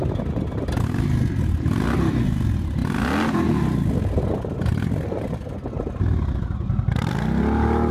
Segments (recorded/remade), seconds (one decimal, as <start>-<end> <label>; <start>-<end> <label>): 0.0-7.9 recorded